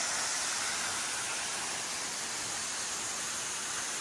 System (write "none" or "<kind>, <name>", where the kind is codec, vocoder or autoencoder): none